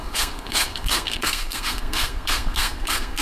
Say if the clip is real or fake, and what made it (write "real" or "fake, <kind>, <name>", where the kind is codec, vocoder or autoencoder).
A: fake, codec, SNAC